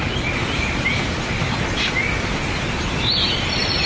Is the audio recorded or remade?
recorded